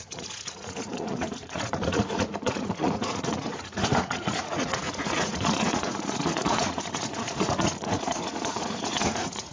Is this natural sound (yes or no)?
no